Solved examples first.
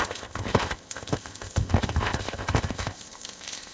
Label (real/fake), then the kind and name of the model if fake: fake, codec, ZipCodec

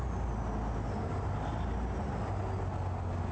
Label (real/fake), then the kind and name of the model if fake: real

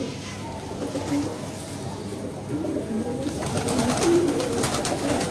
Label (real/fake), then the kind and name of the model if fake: real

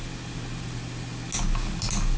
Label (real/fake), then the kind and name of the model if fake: real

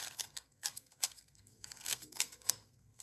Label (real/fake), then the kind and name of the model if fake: fake, codec, SNAC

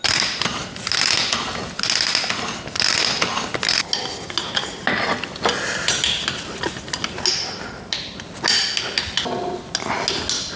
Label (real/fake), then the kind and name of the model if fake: real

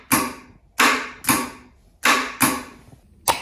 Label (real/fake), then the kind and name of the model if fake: real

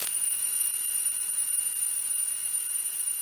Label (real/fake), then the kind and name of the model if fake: fake, vocoder, Vocos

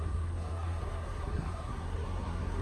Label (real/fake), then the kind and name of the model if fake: fake, codec, SNAC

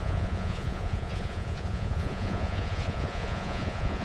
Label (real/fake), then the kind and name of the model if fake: fake, vocoder, Vocos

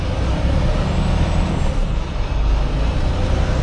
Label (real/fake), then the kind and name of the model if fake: real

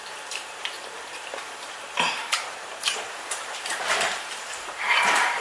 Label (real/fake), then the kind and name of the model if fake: fake, vocoder, BigVGAN v2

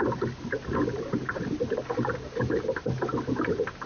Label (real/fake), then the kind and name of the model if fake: real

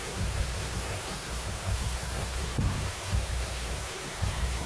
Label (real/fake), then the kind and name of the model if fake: fake, codec, SNAC